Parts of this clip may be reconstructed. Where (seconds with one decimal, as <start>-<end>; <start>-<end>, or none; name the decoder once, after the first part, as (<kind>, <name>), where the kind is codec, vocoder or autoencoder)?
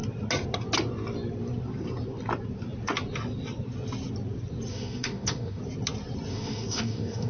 4.7-5.6 (autoencoder, DAC-VAE); 6.3-7.3